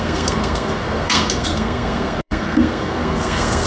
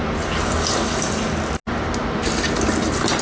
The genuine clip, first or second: second